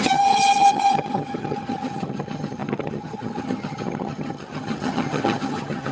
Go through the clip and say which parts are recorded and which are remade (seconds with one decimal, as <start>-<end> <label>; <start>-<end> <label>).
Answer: 0.0-5.9 remade